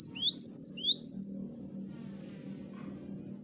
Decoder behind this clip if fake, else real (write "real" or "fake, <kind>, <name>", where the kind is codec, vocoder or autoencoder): real